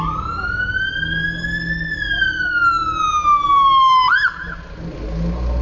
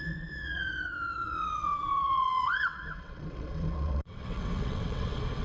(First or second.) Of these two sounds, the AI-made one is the second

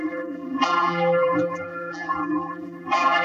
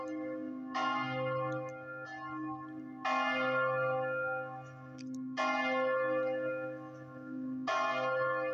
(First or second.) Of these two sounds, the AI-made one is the first